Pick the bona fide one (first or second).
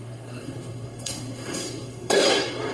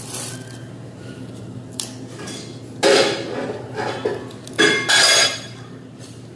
second